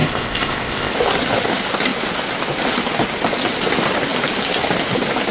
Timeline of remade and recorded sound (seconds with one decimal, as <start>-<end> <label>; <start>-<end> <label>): 0.0-0.9 remade; 0.9-5.3 recorded